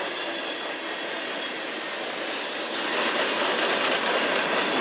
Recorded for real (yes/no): yes